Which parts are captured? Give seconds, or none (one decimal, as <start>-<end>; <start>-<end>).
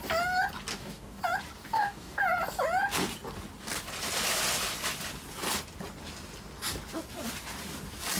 0.0-0.7; 1.2-1.6; 2.2-8.2